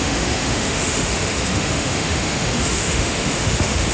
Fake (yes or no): yes